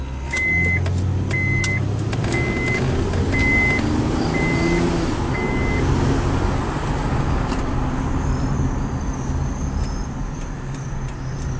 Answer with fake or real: real